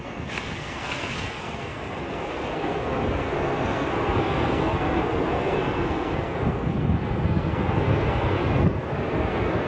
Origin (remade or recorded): remade